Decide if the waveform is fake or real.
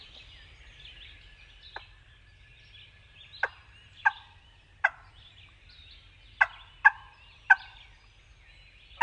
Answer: real